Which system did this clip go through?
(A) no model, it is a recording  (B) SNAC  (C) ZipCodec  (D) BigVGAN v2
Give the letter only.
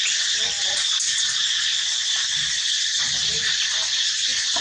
A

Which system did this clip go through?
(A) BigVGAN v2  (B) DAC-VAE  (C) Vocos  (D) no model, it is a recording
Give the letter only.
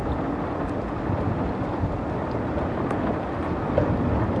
D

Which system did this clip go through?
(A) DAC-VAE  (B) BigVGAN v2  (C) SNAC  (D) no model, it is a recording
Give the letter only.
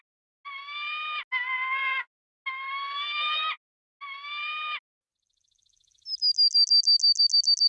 D